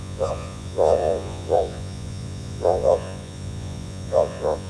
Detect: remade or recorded remade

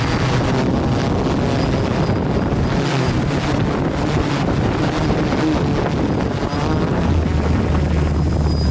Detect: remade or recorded recorded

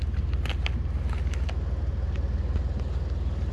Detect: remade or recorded recorded